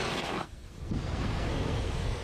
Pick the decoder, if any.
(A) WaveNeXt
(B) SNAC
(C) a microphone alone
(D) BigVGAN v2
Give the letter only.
B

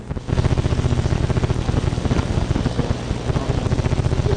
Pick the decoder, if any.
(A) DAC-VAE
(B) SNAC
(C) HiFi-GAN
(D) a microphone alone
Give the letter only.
D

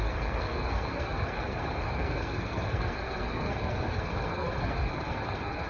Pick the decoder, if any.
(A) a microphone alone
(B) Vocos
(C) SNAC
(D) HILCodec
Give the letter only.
C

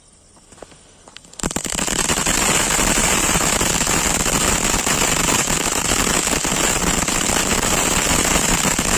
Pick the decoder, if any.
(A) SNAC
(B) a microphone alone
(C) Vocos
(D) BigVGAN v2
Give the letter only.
B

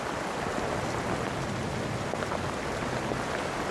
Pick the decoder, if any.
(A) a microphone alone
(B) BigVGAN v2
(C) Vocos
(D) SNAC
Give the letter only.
A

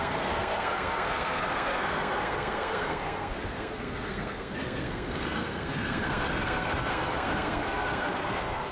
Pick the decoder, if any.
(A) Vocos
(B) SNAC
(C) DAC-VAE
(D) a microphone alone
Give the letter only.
B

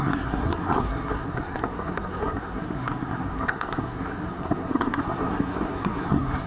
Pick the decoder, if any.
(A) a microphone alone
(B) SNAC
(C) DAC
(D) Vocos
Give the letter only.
B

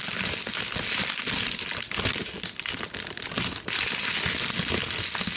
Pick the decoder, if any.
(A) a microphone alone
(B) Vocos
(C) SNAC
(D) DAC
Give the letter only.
A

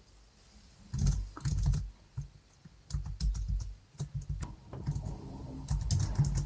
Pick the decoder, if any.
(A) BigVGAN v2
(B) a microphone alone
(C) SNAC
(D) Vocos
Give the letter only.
B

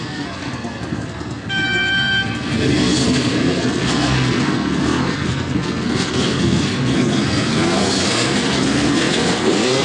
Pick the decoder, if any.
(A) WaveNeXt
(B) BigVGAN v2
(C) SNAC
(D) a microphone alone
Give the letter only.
C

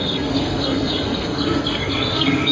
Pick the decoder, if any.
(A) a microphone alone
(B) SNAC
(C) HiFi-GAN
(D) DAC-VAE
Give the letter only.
B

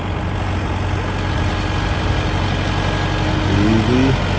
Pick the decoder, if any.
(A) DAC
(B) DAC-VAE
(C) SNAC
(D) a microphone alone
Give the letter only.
D